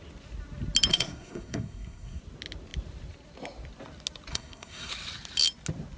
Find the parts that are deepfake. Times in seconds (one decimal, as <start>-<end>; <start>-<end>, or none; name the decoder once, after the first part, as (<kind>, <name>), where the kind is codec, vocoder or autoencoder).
0.9-2.2 (codec, SNAC); 4.3-4.9